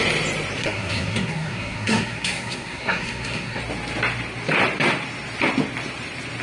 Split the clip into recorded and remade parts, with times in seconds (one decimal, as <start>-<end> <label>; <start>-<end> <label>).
0.0-0.6 recorded; 0.6-3.6 remade; 3.6-6.4 recorded